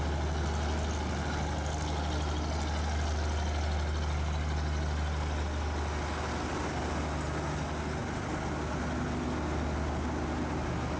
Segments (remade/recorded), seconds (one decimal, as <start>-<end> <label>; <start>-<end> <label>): 0.0-11.0 recorded